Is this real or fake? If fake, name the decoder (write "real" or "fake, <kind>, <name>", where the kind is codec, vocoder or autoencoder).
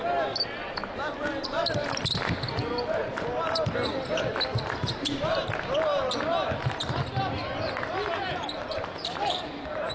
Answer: real